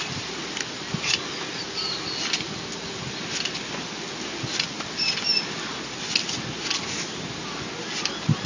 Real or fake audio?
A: real